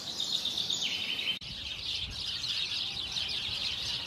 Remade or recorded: remade